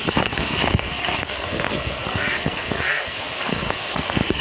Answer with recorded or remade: remade